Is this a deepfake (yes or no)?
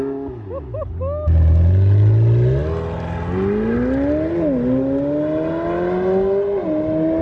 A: no